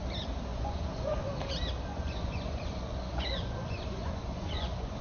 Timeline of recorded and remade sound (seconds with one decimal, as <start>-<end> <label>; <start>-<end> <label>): 0.0-0.5 recorded; 0.5-1.3 remade; 1.3-1.9 recorded; 1.9-5.0 remade